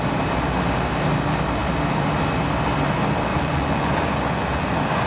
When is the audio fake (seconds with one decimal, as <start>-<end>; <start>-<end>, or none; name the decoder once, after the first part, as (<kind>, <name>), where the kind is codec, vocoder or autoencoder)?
3.3-5.1 (vocoder, Vocos)